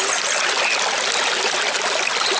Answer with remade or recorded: recorded